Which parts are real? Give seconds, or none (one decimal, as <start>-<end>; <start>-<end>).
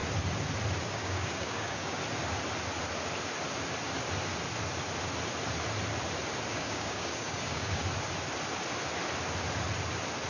0.0-0.8; 2.0-6.5; 7.8-10.3